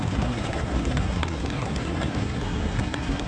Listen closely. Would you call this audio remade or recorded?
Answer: remade